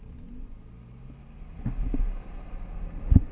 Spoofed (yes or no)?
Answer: no